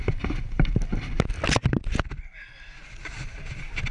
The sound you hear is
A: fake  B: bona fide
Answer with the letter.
B